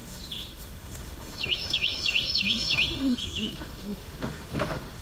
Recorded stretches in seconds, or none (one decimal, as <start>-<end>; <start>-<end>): none